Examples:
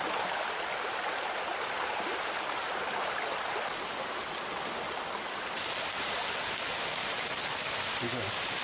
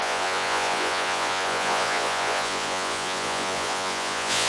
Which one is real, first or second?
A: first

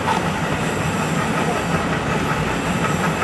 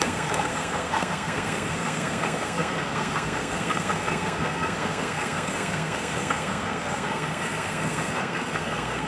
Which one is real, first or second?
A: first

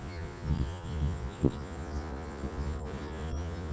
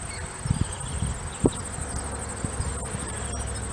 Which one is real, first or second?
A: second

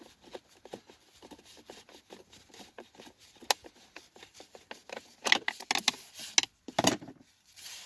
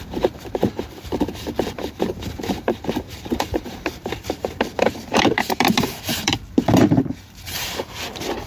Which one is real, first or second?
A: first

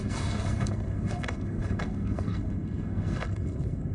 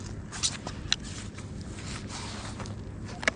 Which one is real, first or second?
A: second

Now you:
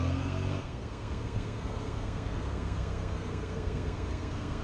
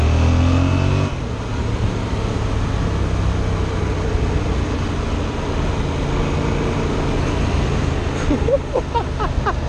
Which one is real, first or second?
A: second